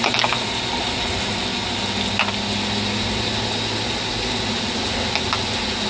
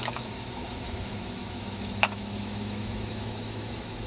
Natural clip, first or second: first